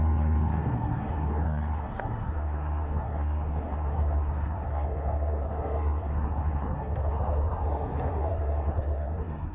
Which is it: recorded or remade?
remade